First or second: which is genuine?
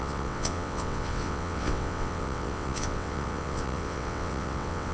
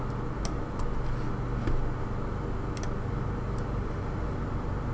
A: second